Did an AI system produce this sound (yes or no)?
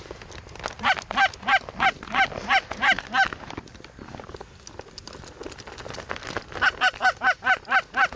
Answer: no